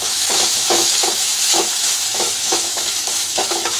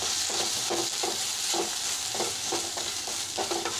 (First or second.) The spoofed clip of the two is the first